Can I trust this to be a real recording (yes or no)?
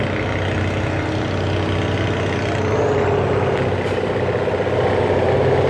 yes